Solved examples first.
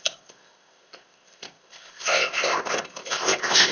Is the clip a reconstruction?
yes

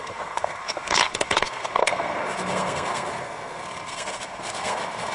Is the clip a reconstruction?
yes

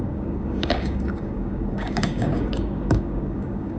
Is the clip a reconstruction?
yes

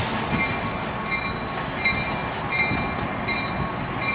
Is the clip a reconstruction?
no